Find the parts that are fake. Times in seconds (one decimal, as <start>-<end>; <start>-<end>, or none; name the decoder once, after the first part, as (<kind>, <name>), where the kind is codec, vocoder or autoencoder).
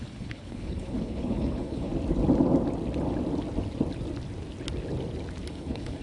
0.0-1.9 (codec, HILCodec); 5.5-6.0